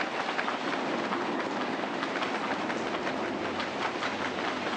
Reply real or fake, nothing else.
real